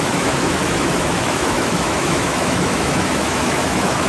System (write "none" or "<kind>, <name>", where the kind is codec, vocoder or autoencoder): autoencoder, DAC-VAE